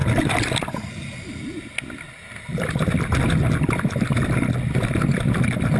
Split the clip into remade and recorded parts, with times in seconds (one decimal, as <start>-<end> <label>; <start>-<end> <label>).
0.0-5.8 recorded